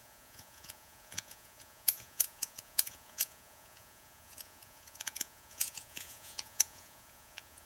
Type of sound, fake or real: fake